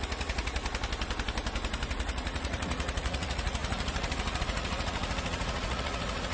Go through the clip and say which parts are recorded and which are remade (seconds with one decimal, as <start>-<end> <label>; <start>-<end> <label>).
0.0-0.6 remade; 0.6-1.9 recorded; 1.9-6.3 remade